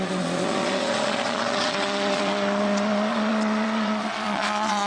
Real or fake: fake